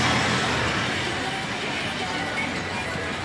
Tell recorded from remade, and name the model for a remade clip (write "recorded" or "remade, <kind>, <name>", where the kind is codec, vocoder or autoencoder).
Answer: recorded